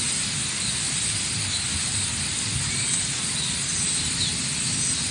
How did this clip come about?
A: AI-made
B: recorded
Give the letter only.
B